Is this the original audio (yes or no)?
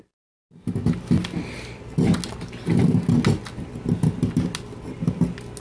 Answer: yes